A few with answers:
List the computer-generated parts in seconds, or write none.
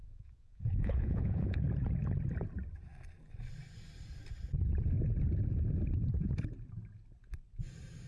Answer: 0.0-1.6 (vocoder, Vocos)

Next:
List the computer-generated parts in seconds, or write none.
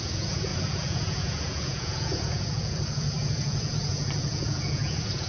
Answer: 0.0-5.3 (vocoder, Vocos)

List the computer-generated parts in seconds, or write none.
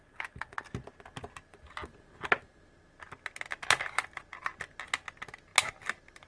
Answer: none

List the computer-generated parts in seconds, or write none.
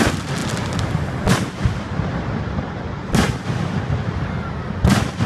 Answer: none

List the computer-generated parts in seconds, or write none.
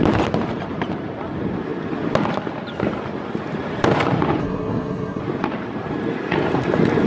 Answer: 4.4-5.2 (codec, SNAC)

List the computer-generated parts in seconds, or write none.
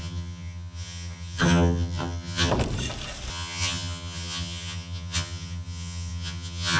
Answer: 0.0-2.5 (vocoder, HiFi-GAN); 3.3-6.8